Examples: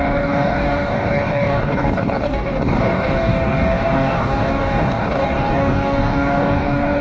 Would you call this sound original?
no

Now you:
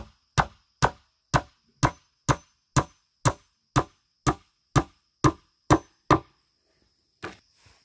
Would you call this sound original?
yes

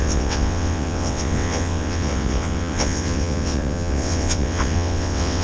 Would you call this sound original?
no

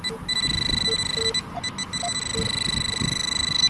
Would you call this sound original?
yes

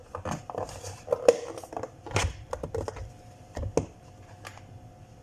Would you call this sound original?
yes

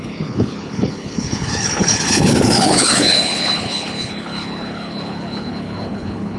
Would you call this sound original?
no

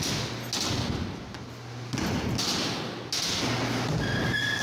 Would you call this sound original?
yes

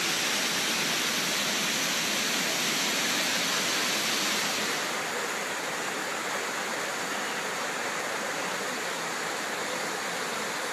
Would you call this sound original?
yes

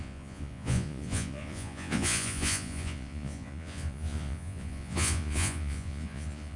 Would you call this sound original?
no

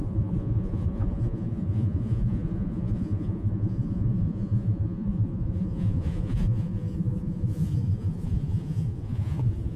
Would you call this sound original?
no